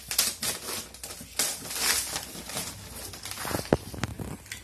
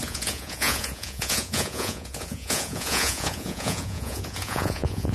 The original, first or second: first